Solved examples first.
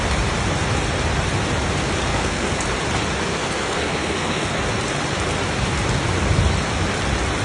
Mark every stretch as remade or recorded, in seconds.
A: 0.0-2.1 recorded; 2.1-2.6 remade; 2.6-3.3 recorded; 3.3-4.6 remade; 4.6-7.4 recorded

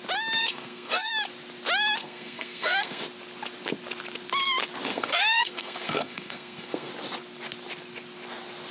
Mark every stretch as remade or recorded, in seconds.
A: 0.0-0.4 recorded; 0.4-1.1 remade; 1.1-2.0 recorded; 2.0-3.0 remade; 3.0-4.9 recorded; 4.9-6.9 remade; 6.9-8.7 recorded